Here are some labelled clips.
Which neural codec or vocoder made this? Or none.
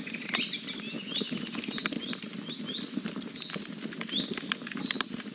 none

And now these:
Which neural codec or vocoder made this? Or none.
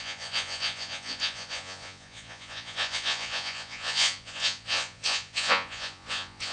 vocoder, Vocos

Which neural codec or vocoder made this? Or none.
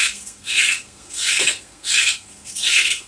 codec, SNAC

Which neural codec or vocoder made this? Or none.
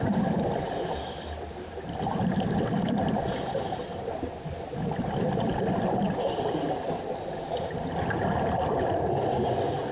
none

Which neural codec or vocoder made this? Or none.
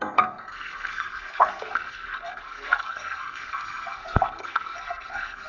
codec, SNAC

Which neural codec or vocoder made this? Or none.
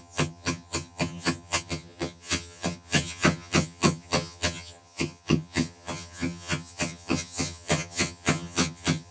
vocoder, HiFi-GAN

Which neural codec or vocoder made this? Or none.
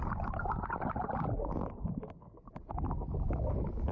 none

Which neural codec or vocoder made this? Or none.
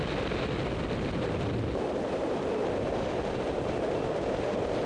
none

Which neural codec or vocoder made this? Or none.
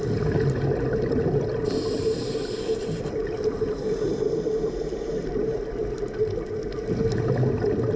none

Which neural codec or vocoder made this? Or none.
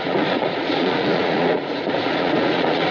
vocoder, Vocos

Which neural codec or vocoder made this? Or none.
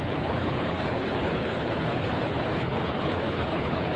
codec, HILCodec